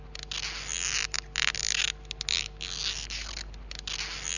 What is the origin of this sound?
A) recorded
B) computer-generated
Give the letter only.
A